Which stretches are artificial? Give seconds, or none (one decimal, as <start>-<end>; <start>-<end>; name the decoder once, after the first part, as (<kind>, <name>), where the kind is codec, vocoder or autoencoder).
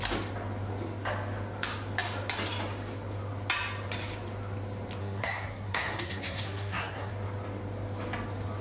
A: 5.0-7.1 (codec, SNAC)